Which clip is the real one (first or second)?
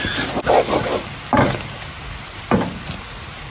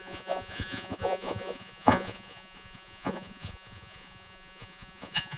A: first